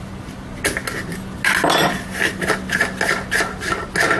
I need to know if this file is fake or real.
real